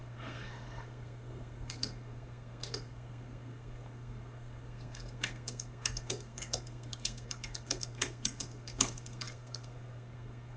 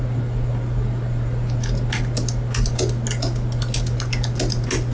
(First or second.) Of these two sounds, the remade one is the first